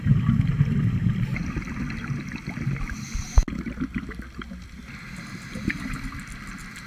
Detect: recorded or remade recorded